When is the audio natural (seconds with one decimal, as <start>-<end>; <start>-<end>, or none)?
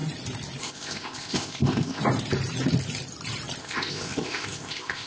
0.0-0.6; 2.0-3.6